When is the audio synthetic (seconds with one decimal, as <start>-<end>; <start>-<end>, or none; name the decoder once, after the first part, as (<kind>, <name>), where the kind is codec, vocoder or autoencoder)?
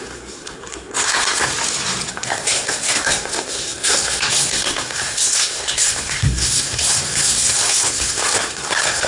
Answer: 0.0-1.5 (codec, SNAC); 2.1-9.1